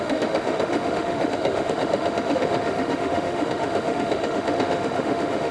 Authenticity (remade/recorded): remade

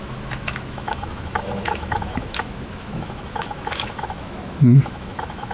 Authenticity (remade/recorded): remade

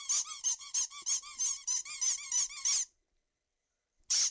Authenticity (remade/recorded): recorded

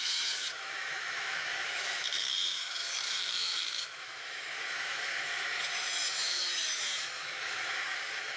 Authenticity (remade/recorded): remade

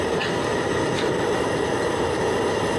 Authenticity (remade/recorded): recorded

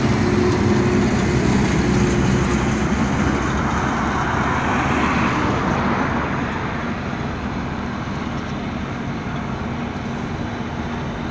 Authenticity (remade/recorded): recorded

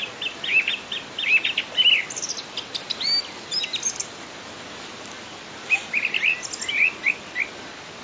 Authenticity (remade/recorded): recorded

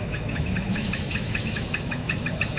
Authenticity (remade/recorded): remade